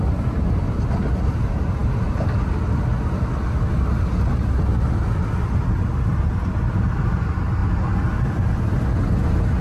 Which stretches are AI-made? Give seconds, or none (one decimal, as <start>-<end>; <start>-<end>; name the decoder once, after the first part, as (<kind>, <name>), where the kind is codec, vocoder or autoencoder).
none